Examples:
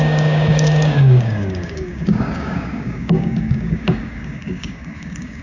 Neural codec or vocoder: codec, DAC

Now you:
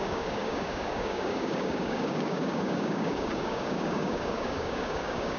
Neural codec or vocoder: codec, DAC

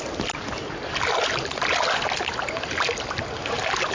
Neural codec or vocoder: none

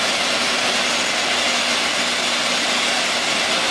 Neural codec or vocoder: none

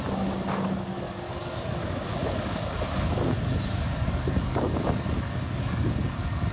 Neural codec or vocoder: codec, DAC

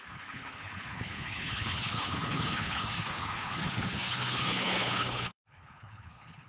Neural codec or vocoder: codec, HILCodec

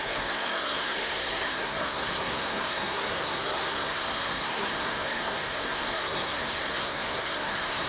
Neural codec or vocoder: codec, SNAC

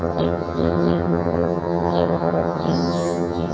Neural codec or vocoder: vocoder, HiFi-GAN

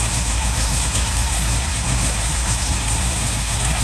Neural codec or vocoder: codec, SNAC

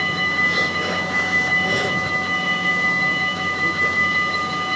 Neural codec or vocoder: autoencoder, DAC-VAE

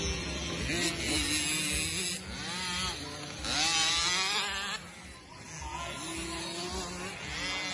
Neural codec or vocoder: none